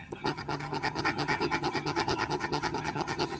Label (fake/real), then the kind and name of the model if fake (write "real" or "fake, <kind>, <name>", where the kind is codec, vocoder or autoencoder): fake, vocoder, HiFi-GAN